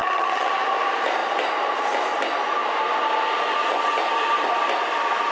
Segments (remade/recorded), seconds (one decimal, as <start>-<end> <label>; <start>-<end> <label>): 0.0-0.5 remade; 0.5-5.3 recorded